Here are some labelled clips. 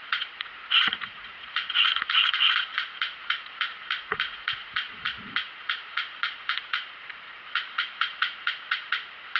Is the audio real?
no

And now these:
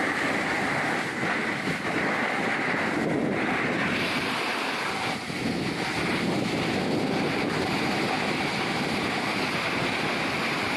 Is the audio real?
yes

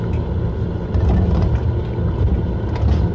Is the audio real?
yes